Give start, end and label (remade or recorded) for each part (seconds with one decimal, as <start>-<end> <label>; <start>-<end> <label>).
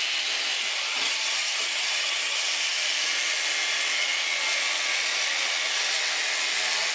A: 0.0-0.9 recorded; 0.9-2.5 remade; 2.5-6.9 recorded